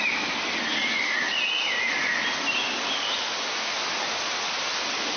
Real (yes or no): yes